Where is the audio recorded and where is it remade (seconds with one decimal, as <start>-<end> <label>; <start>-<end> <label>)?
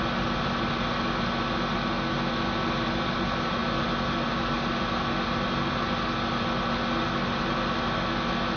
0.0-8.6 recorded